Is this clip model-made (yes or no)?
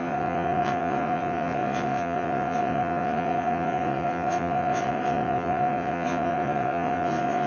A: yes